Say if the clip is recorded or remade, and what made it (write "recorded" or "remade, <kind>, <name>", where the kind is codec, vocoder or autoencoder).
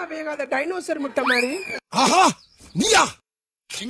remade, vocoder, WaveNeXt